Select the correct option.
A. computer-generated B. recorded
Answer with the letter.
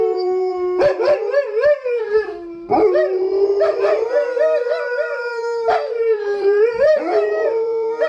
A